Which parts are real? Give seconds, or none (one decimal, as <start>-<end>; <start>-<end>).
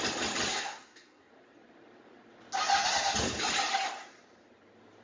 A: 0.0-0.5; 1.3-5.0